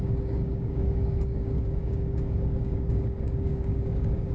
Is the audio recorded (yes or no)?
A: no